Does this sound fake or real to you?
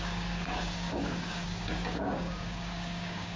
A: fake